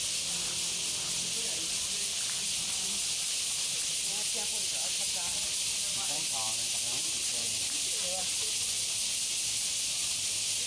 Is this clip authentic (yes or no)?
yes